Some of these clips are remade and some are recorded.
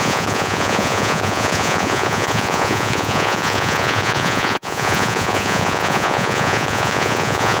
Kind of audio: remade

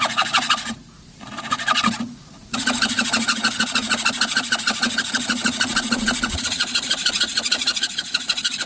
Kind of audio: remade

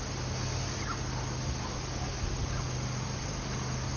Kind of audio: recorded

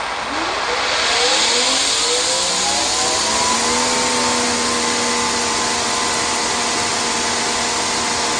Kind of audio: recorded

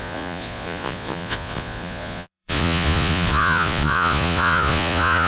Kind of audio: remade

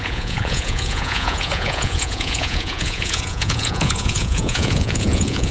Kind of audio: remade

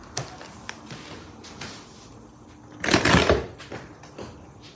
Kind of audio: recorded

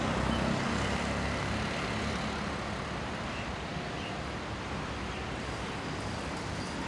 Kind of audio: recorded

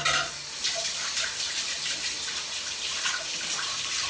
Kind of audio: recorded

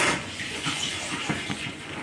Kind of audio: remade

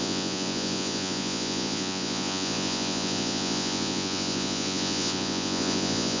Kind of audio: remade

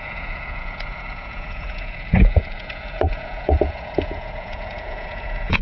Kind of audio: remade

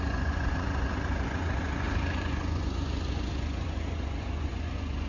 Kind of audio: remade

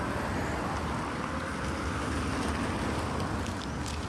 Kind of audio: recorded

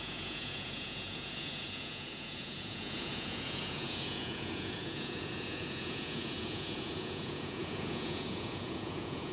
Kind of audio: remade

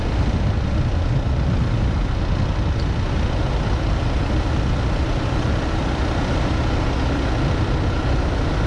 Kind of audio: recorded